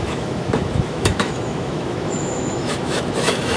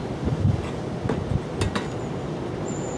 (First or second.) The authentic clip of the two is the second